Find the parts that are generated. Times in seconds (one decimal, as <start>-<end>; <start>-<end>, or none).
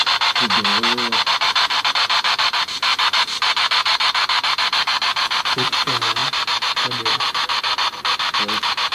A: none